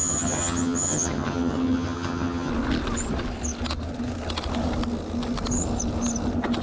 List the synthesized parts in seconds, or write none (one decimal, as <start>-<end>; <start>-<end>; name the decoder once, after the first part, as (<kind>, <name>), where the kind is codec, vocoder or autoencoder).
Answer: 0.0-2.5 (vocoder, HiFi-GAN)